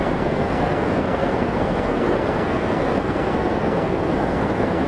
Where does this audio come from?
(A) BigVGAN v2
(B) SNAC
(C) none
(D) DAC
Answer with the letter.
B